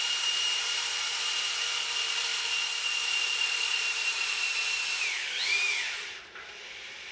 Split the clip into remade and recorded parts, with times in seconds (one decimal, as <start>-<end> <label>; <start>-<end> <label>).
0.0-7.1 remade